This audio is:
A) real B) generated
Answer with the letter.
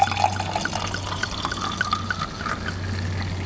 A